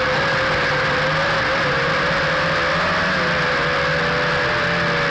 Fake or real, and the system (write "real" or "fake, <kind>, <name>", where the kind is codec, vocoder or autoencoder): real